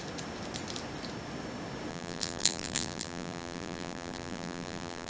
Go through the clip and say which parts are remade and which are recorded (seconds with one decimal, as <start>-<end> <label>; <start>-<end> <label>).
0.0-1.9 recorded; 1.9-5.1 remade